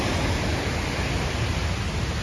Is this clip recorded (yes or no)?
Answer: yes